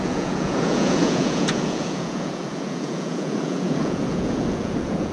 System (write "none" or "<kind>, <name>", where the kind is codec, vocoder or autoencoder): vocoder, Vocos